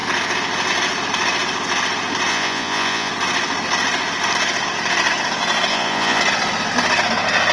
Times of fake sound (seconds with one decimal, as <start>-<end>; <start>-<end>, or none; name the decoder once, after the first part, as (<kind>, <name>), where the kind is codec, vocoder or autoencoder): 2.3-3.1 (vocoder, Vocos); 5.7-6.2